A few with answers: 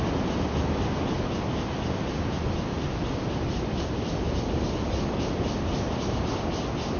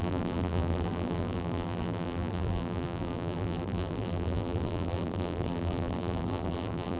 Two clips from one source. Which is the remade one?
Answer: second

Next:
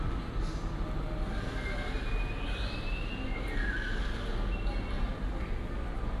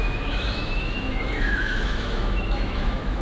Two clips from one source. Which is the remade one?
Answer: second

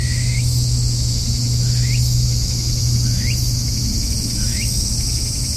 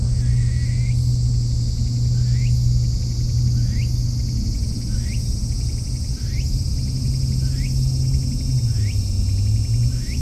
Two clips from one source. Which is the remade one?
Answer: first